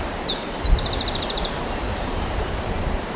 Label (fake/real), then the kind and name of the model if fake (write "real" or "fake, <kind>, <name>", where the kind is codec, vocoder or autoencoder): fake, vocoder, BigVGAN v2